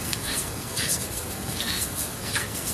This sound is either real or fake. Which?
fake